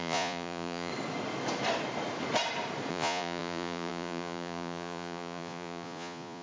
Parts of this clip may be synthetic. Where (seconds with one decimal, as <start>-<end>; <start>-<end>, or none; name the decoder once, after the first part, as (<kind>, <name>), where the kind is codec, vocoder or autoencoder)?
0.0-0.9 (vocoder, Vocos); 2.9-6.4